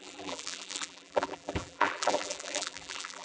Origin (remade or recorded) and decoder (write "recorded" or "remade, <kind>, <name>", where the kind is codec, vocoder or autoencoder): remade, vocoder, BigVGAN v2